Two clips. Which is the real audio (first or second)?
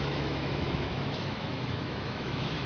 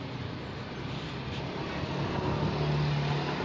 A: second